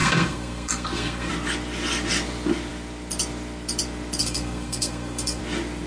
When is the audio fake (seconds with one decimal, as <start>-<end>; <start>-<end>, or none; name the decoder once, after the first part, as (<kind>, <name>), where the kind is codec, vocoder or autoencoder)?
0.0-1.3 (codec, SNAC); 4.2-5.4